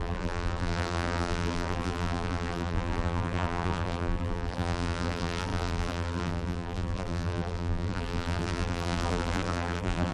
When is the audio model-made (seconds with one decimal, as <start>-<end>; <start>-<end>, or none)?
0.0-10.1